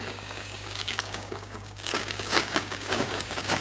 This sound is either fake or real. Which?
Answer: fake